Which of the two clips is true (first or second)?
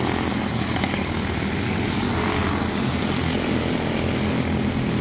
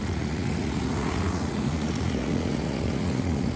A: first